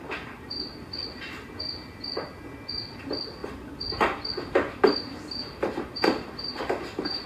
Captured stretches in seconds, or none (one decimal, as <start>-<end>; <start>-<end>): 0.0-7.3